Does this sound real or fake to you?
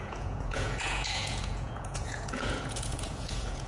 fake